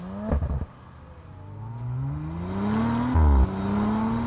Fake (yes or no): no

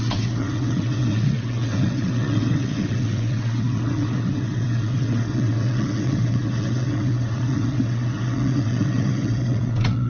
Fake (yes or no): yes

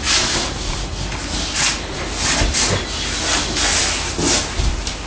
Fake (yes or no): no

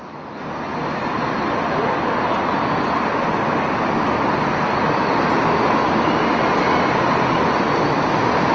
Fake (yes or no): no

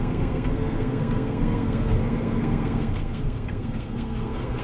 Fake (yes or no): yes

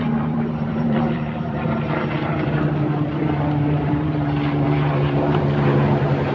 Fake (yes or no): yes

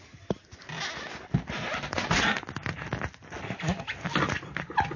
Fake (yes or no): no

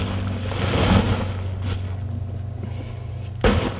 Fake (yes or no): no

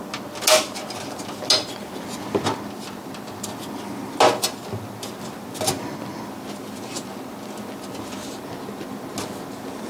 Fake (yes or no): no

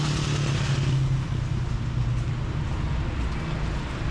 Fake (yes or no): no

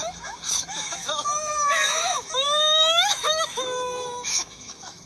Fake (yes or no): yes